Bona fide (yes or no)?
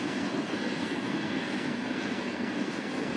no